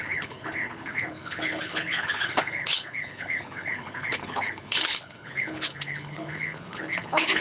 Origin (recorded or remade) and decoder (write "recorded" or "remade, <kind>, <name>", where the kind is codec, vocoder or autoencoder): remade, codec, HILCodec